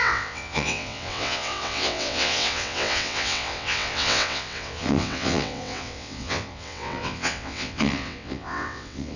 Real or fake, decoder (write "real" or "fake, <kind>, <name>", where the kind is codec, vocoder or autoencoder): fake, vocoder, WaveNeXt